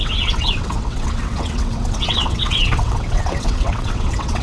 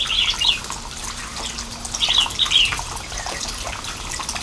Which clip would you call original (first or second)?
second